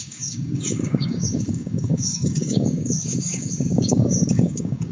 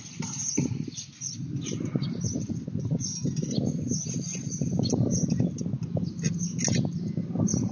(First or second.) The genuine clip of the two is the second